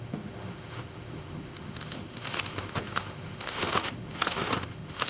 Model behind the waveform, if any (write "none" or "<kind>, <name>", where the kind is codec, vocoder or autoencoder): autoencoder, DAC-VAE